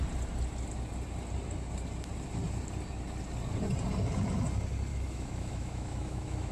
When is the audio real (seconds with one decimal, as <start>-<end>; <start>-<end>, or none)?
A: 0.0-4.9